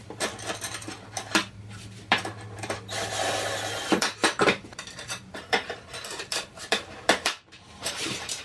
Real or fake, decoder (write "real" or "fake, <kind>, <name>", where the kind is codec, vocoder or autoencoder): fake, vocoder, BigVGAN v2